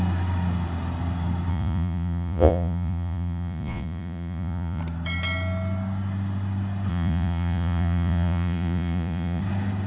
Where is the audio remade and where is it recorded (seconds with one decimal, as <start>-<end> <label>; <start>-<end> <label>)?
0.0-1.5 recorded; 1.5-4.8 remade; 4.8-6.9 recorded; 6.9-9.4 remade; 9.4-9.9 recorded